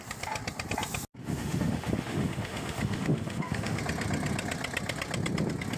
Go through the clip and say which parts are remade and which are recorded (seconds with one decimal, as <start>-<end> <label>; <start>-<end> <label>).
0.0-1.2 recorded; 1.2-3.8 remade; 3.8-5.8 recorded